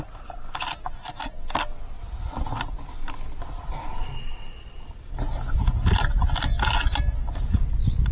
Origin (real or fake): real